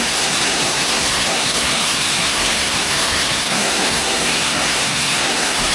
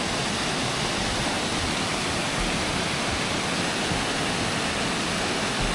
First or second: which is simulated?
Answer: first